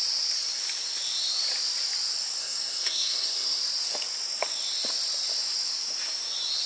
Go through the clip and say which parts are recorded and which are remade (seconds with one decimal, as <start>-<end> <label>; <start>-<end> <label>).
0.0-2.4 recorded; 2.4-3.6 remade; 3.6-6.7 recorded

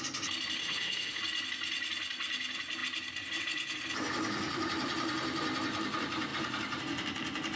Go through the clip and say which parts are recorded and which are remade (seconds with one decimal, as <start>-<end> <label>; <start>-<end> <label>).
0.0-0.6 recorded; 0.6-1.2 remade; 1.2-7.6 recorded

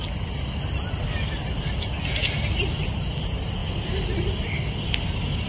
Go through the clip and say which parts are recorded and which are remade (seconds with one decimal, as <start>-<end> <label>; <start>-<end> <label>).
0.0-5.5 recorded

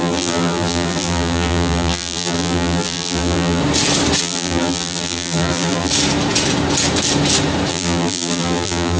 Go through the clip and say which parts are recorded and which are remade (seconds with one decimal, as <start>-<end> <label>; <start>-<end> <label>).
0.0-3.6 remade; 3.6-4.2 recorded; 4.2-5.9 remade; 5.9-7.7 recorded; 7.7-9.0 remade

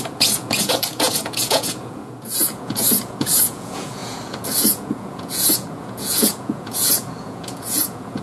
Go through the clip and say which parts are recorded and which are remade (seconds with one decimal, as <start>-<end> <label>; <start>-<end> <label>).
0.0-8.2 remade

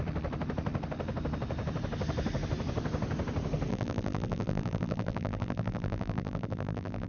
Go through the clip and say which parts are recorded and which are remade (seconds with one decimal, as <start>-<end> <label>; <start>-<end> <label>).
0.0-3.7 recorded; 3.7-7.1 remade